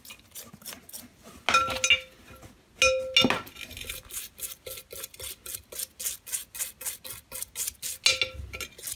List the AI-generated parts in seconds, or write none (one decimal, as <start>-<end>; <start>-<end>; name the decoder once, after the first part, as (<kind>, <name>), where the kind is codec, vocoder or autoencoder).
none